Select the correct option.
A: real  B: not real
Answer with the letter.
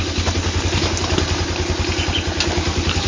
A